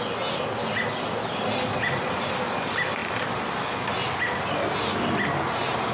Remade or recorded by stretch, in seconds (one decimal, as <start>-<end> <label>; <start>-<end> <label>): 0.0-5.9 recorded